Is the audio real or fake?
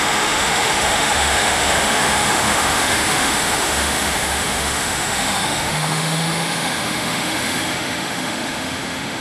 fake